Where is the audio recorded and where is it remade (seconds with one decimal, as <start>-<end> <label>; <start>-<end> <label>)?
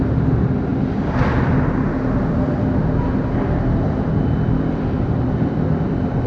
0.0-6.3 recorded